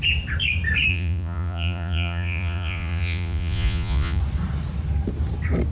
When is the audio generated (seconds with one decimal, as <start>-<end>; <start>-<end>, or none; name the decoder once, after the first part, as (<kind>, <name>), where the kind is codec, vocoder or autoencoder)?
0.9-4.2 (vocoder, Vocos)